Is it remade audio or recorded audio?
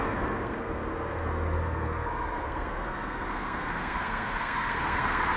remade